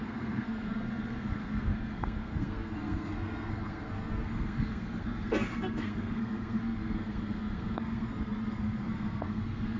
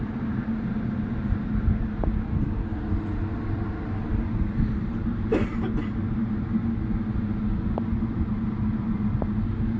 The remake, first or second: first